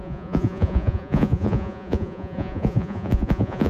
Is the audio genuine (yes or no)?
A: no